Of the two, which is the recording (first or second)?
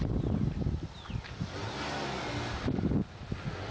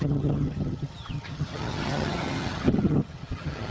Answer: first